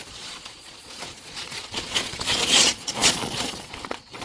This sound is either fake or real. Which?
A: fake